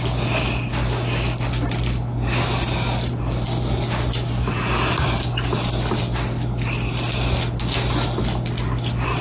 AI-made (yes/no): no